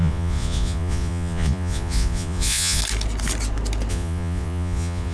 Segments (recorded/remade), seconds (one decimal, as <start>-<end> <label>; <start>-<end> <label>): 0.0-2.8 remade; 2.8-3.9 recorded; 3.9-5.1 remade